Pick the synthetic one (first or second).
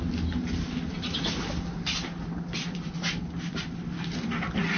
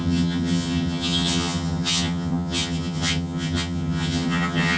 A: second